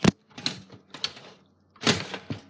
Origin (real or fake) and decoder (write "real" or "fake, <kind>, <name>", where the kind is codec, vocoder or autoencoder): real